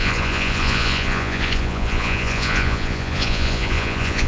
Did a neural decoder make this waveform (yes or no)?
yes